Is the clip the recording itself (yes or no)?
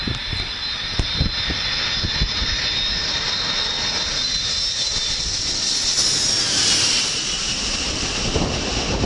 yes